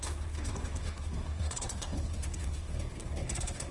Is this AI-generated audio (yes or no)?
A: yes